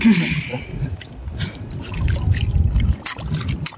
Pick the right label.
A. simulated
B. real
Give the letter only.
B